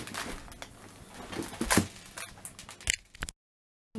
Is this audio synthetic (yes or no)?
no